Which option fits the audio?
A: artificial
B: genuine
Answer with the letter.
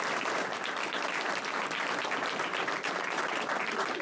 B